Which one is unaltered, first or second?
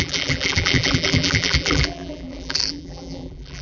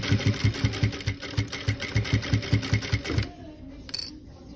second